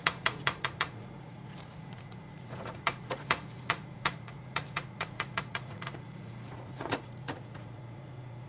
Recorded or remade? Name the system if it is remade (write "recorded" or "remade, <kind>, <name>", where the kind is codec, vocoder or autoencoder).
remade, vocoder, Vocos